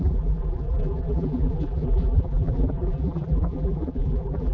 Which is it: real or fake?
fake